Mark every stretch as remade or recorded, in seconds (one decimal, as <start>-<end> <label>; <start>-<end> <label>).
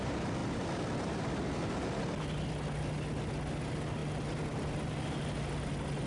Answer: 0.0-6.1 recorded